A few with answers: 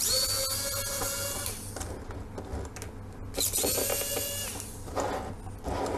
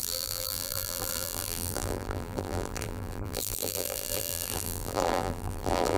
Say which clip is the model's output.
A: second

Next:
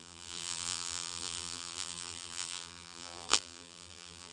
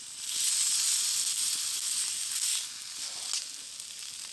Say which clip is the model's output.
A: first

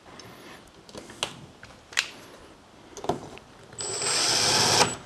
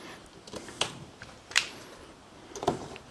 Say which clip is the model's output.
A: second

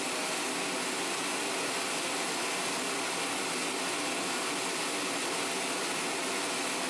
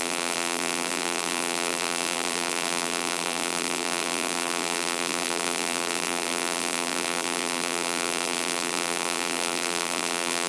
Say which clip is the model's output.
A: second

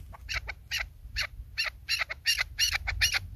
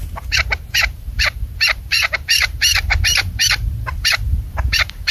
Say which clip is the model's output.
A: second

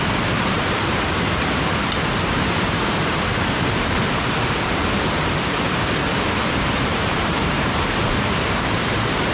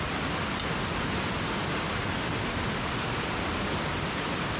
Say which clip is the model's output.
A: first